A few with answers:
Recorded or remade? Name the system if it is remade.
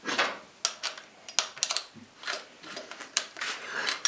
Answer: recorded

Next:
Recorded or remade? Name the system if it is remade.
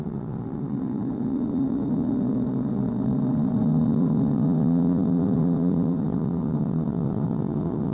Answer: remade, vocoder, Vocos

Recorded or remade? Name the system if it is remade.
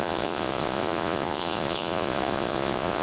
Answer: remade, vocoder, Vocos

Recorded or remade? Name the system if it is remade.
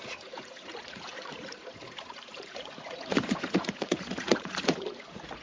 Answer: remade, vocoder, Vocos